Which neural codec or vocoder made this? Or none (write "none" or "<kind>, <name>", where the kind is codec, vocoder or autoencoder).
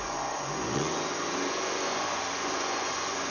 vocoder, Vocos